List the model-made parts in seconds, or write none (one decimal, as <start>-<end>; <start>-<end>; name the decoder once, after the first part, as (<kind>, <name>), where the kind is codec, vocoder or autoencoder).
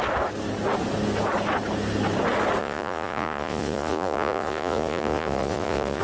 2.6-6.0 (vocoder, Vocos)